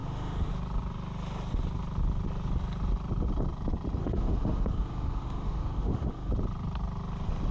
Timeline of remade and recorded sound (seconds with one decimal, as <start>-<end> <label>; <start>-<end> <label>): 0.0-0.5 remade; 0.5-4.0 recorded; 4.0-6.3 remade; 6.3-7.5 recorded